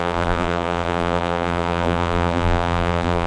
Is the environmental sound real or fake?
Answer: fake